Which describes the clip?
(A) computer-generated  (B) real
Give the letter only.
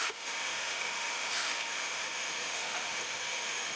A